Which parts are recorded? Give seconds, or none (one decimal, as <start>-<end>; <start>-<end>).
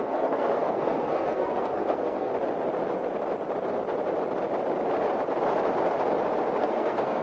2.3-6.6